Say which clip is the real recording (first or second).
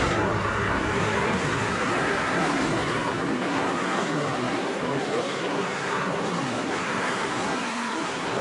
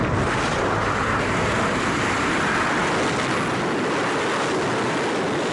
second